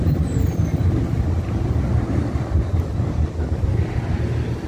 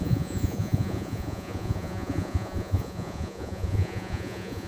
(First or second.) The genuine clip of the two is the first